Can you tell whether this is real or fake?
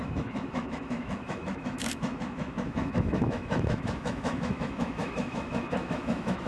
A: fake